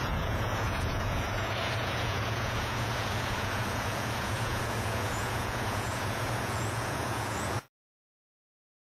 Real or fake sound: fake